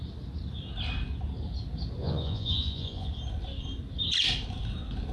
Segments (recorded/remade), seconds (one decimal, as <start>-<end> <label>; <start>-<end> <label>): 0.0-2.0 recorded; 2.0-3.1 remade; 3.1-5.1 recorded